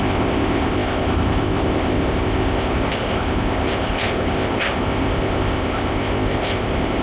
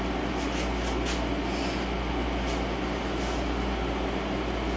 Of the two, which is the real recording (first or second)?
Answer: second